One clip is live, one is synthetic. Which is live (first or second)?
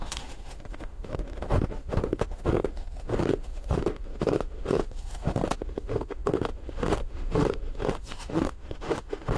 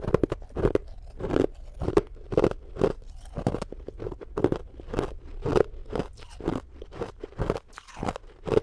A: second